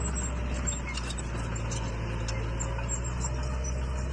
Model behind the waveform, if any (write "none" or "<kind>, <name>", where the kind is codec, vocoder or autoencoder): none